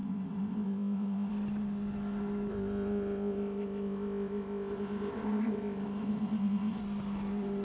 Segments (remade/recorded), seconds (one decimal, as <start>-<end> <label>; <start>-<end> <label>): 0.0-1.3 remade; 1.3-2.5 recorded; 2.5-6.8 remade; 6.8-7.6 recorded